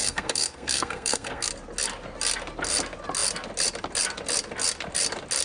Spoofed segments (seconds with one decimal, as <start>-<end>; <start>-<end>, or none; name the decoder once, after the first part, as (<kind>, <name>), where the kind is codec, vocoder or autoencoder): 0.0-1.5 (codec, SNAC)